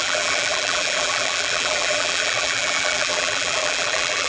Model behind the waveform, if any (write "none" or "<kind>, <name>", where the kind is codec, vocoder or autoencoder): vocoder, BigVGAN v2